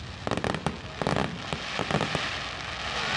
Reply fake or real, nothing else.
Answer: real